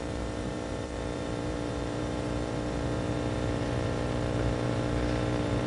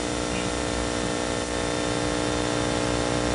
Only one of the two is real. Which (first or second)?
second